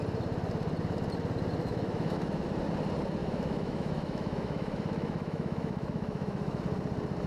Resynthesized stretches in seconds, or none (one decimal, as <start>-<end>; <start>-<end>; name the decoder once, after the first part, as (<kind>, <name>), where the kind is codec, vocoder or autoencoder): 1.6-2.3 (autoencoder, DAC-VAE); 3.2-6.6